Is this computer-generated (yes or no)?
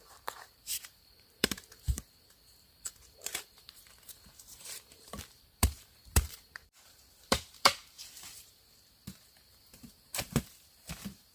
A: yes